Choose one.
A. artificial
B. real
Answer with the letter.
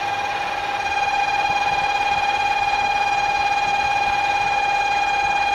A